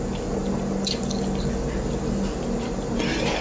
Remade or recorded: recorded